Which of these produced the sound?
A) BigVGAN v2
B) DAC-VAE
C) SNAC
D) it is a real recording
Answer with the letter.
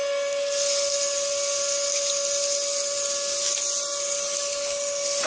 D